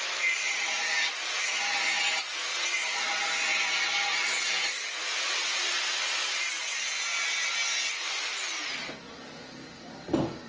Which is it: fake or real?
real